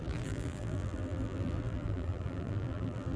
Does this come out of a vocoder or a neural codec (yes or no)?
yes